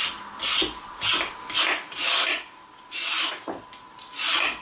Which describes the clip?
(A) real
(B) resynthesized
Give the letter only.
A